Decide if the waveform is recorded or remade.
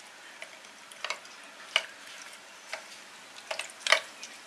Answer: recorded